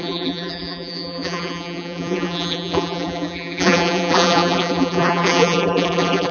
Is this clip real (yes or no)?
no